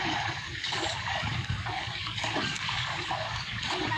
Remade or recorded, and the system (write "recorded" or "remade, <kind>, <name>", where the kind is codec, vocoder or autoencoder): remade, codec, DAC